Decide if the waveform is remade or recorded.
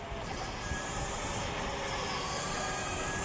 recorded